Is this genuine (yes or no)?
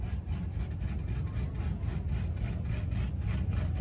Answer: yes